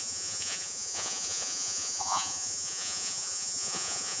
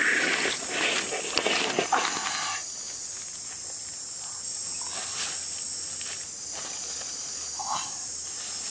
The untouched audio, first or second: second